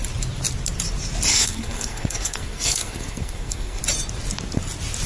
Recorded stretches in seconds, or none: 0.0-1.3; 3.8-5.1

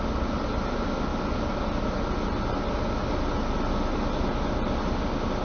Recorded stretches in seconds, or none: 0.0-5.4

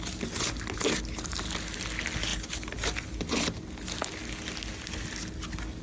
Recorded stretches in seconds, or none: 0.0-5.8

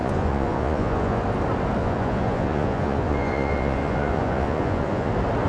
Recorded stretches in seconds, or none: 1.2-1.8; 5.1-5.5

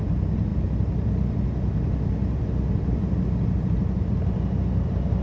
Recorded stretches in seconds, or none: 0.0-5.2

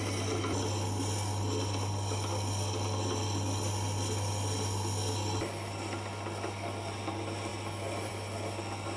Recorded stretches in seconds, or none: 0.0-9.0

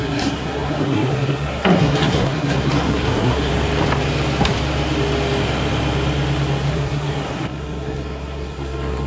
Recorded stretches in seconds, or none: 3.5-6.7

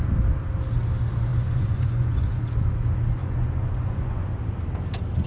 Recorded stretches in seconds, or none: 0.0-1.3; 2.4-3.2; 4.3-5.3